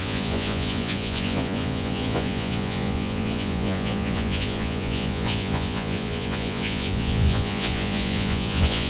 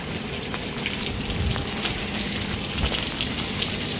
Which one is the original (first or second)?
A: second